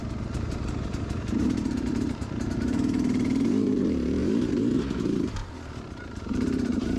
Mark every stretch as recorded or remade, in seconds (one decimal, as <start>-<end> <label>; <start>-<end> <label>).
0.0-7.0 remade